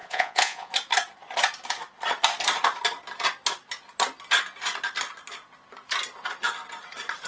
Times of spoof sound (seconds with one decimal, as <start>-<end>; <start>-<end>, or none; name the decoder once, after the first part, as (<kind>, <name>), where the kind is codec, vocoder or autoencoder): 0.0-0.7 (vocoder, Vocos)